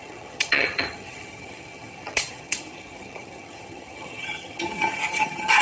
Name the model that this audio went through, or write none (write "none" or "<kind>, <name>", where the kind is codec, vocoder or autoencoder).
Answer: vocoder, HiFi-GAN